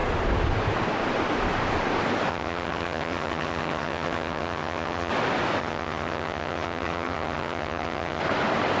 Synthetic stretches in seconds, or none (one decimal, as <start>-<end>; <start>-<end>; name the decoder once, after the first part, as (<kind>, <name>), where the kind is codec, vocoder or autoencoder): 2.3-5.1 (vocoder, HiFi-GAN); 5.6-8.2